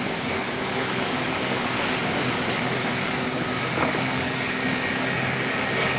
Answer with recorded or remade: remade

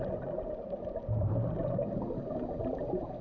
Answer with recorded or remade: recorded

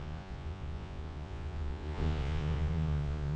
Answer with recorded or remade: remade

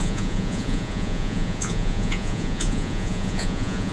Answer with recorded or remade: remade